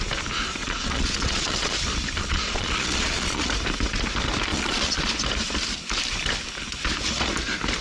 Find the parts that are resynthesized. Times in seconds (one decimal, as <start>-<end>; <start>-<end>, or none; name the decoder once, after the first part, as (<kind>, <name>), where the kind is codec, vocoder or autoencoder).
0.6-1.8 (vocoder, Vocos); 2.2-3.5; 4.5-5.0